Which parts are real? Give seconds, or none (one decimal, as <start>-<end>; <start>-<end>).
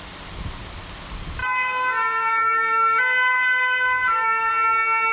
0.0-1.4; 4.5-5.1